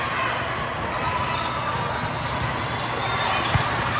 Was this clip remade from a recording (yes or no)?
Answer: no